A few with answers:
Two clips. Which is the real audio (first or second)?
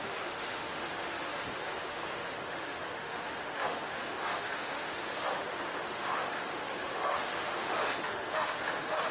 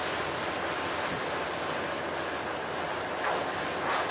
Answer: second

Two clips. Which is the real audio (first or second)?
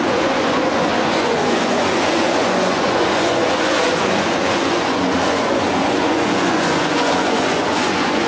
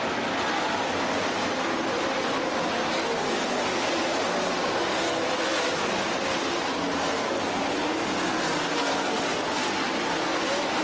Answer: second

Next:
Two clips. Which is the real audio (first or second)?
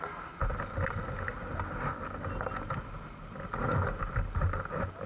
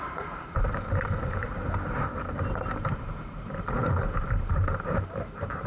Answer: first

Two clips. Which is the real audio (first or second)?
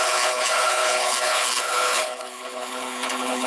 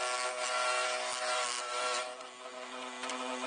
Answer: second